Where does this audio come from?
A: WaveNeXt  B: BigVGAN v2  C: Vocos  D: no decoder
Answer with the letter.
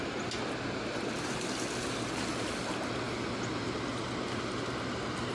D